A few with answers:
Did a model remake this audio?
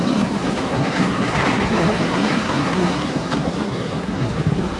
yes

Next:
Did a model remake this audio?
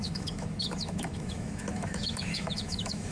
yes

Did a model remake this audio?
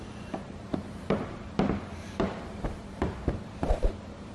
yes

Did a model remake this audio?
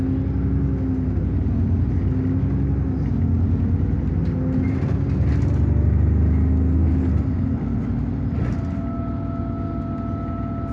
no